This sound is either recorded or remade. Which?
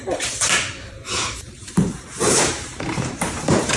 remade